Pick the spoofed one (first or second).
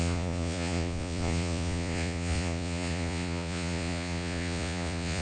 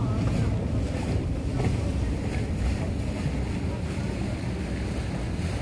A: first